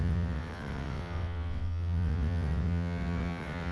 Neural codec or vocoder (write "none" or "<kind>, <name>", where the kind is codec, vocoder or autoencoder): vocoder, WaveNeXt